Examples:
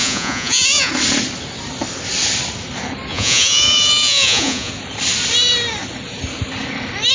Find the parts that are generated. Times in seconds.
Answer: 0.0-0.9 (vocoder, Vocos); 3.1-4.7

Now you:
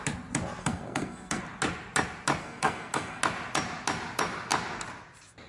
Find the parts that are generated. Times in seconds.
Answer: 0.6-1.4 (codec, SNAC); 2.4-3.2